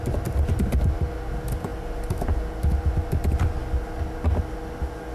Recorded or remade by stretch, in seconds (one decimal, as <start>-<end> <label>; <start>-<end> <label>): 0.0-5.1 recorded